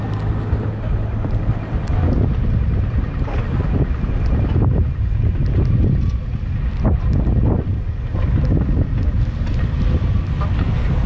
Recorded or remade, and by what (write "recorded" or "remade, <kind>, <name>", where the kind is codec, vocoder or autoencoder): recorded